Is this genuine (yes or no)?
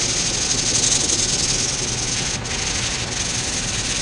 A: yes